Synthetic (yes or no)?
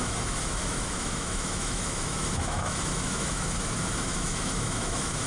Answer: yes